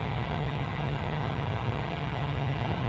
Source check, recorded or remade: remade